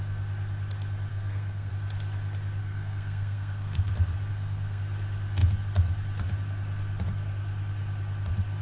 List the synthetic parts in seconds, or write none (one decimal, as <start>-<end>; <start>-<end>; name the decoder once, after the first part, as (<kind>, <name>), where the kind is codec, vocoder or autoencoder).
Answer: 1.1-1.7 (codec, SNAC); 2.6-3.9; 4.3-4.8